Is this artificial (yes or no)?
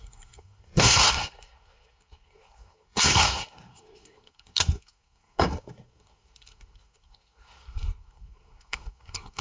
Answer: yes